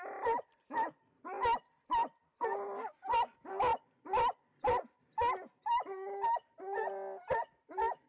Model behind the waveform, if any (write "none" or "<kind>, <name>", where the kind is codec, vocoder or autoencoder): none